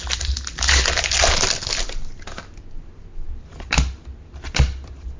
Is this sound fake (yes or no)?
no